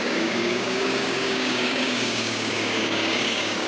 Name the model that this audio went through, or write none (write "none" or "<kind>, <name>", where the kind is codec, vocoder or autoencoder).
codec, DAC